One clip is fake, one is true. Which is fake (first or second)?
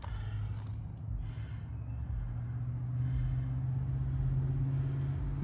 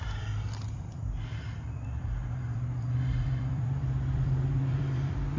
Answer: second